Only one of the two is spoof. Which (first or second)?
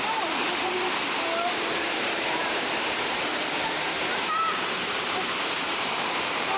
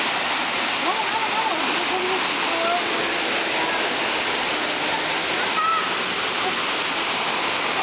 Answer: first